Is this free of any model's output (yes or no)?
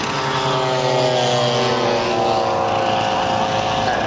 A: yes